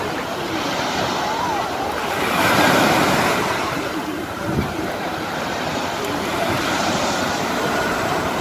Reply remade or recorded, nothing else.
remade